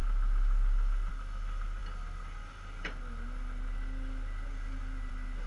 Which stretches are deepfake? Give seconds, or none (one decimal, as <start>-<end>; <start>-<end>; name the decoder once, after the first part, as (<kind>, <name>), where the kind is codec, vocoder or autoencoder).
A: none